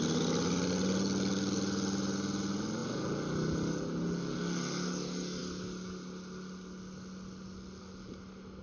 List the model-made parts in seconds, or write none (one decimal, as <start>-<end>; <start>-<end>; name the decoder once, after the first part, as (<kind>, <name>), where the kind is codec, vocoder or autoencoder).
none